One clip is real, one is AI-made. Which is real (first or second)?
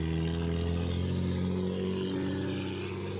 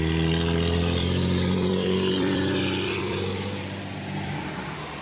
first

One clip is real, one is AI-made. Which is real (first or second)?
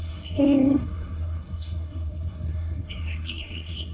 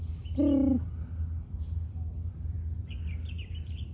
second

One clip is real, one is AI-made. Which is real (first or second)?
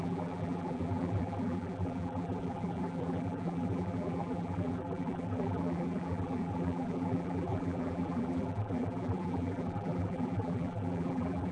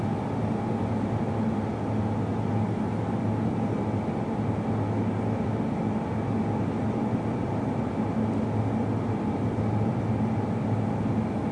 second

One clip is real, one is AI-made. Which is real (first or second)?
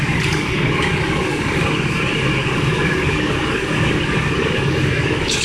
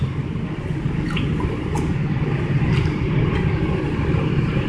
second